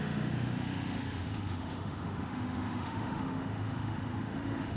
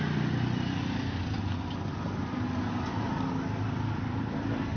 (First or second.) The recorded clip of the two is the second